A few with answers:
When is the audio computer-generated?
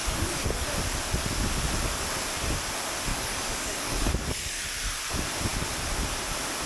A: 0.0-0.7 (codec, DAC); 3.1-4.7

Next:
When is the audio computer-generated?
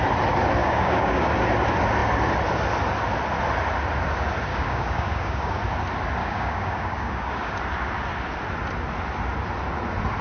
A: 0.6-1.3 (codec, DAC); 4.5-5.6; 6.2-7.6